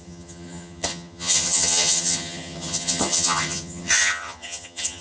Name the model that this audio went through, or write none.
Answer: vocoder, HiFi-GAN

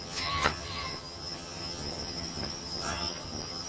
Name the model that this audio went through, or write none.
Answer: vocoder, HiFi-GAN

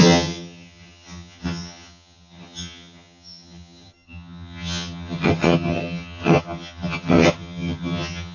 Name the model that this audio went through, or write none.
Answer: vocoder, HiFi-GAN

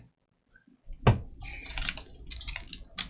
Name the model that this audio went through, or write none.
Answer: none